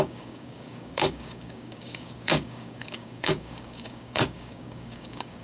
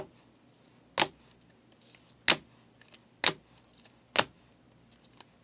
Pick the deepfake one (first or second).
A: first